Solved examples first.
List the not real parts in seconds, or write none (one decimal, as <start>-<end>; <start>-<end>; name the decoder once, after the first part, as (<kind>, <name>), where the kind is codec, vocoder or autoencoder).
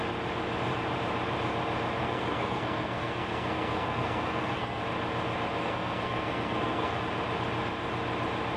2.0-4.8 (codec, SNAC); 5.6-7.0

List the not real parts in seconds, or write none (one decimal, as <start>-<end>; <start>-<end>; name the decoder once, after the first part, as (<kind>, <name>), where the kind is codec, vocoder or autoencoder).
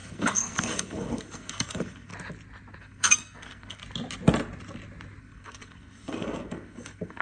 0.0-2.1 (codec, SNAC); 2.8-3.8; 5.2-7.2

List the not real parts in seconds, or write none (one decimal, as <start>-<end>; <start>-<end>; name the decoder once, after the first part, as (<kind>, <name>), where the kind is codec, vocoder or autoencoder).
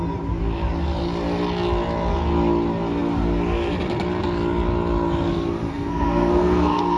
5.7-7.0 (codec, SNAC)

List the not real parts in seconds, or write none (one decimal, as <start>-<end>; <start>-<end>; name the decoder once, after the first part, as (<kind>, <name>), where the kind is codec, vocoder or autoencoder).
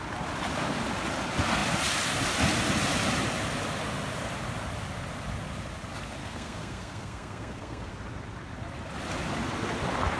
6.2-7.9 (codec, SNAC)